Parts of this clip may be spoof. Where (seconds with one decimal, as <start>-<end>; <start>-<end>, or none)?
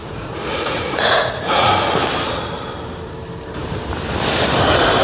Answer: 0.0-1.7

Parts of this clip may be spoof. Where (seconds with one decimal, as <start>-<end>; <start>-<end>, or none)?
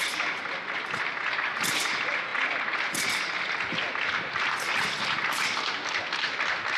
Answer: none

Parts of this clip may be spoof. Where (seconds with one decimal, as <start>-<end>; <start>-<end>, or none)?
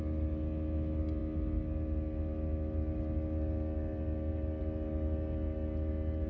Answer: none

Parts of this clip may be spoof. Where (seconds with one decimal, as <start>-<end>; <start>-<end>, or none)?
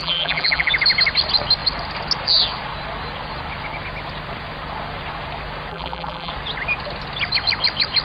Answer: 0.0-0.7; 5.7-6.3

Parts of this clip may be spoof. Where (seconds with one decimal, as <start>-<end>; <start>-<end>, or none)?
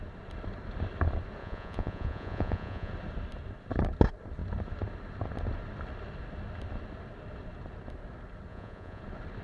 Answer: 1.4-2.9; 8.5-9.0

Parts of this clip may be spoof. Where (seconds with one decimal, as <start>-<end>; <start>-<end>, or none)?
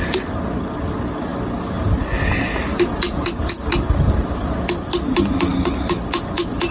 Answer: 2.7-3.2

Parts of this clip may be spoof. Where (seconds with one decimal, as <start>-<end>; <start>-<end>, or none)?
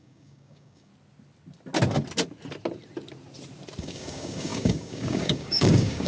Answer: 0.0-0.9; 3.8-6.1